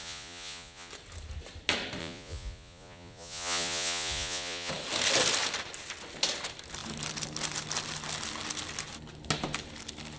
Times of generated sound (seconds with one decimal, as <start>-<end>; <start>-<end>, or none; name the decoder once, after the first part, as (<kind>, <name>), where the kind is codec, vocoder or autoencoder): 0.0-0.9 (vocoder, Vocos); 2.0-4.7